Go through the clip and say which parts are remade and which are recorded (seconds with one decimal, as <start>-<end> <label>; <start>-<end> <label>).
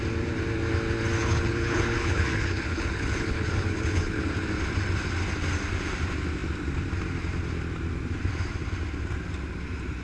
0.0-1.2 recorded; 1.2-4.3 remade; 4.3-10.0 recorded